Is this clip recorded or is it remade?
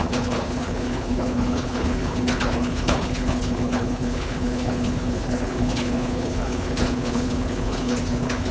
remade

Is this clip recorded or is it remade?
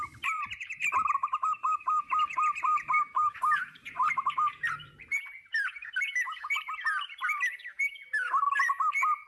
remade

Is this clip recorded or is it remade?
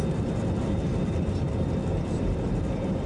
remade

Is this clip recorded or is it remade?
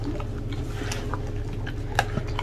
recorded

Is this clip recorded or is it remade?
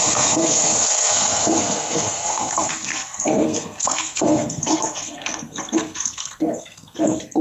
remade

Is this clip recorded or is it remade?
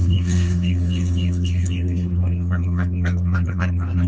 remade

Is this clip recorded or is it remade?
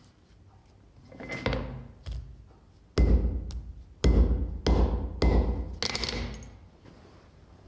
recorded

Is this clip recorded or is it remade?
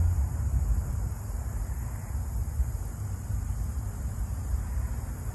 remade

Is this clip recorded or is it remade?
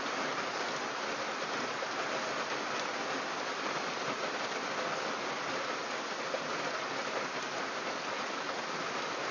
recorded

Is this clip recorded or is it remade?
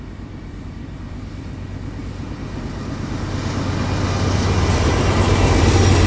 recorded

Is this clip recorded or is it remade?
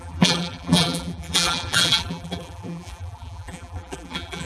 remade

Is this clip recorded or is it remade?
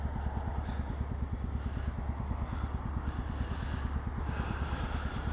recorded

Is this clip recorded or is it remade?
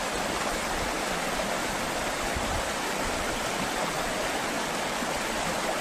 recorded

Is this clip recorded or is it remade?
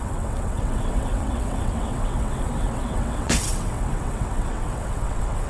remade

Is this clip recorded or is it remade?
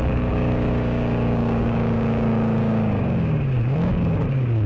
remade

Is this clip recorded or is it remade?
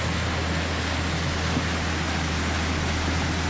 recorded